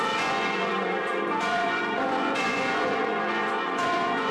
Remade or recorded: remade